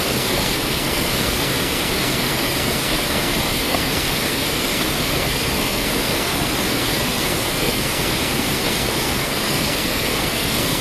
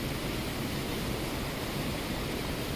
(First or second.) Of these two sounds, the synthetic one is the first